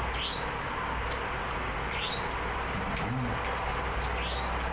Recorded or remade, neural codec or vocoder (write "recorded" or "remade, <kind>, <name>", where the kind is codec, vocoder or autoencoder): recorded